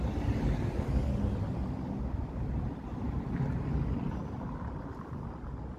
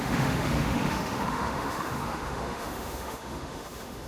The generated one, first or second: second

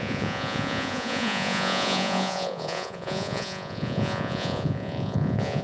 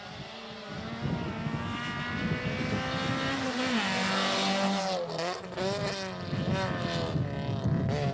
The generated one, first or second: first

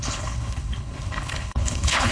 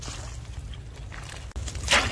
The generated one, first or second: first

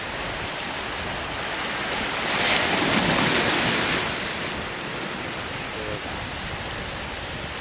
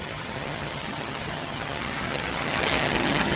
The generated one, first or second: second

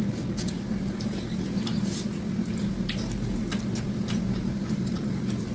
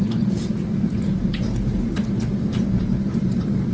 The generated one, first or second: second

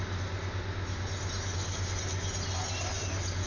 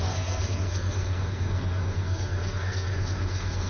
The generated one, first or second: second